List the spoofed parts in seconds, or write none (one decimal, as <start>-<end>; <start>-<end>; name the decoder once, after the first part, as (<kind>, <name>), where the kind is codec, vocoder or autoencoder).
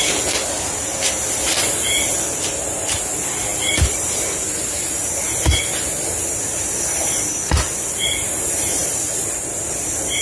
none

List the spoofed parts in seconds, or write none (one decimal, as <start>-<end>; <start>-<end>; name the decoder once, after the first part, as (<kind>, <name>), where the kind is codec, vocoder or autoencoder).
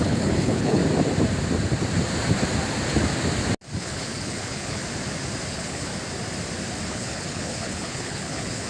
0.0-0.8 (codec, HILCodec); 3.8-4.8; 5.5-5.9; 6.9-8.7